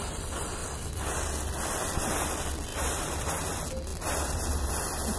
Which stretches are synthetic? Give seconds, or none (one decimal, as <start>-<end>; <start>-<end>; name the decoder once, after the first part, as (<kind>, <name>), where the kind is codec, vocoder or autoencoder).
0.6-1.5 (vocoder, BigVGAN v2); 2.7-3.3; 3.9-4.7